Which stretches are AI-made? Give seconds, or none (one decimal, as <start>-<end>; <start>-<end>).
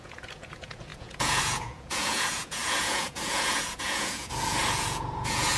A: 0.0-5.6